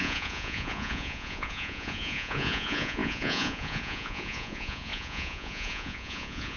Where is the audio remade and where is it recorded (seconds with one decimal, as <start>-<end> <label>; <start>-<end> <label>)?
0.0-6.6 remade

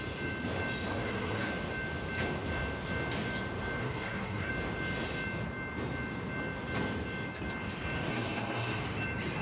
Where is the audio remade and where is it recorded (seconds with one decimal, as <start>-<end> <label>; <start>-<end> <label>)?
0.0-0.9 recorded; 0.9-1.5 remade; 1.5-3.8 recorded; 3.8-4.5 remade; 4.5-8.1 recorded; 8.1-8.8 remade; 8.8-9.4 recorded

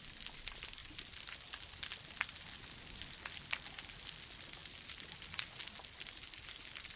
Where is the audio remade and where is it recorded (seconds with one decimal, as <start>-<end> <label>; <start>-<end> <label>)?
0.0-0.8 remade; 0.8-3.0 recorded; 3.0-4.6 remade; 4.6-5.6 recorded; 5.6-7.0 remade